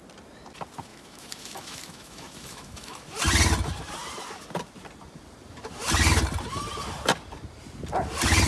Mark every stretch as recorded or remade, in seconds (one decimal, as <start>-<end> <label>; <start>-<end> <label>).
0.0-0.9 recorded; 0.9-3.0 remade; 3.0-8.5 recorded